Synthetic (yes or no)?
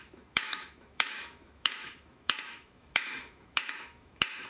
yes